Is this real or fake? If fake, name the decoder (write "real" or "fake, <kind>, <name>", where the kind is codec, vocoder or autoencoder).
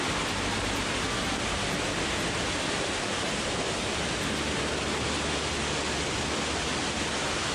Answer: real